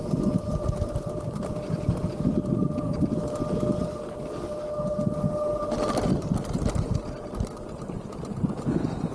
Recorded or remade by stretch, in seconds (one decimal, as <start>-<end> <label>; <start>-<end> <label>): 0.0-9.1 recorded